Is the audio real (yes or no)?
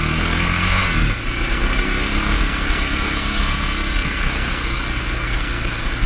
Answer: no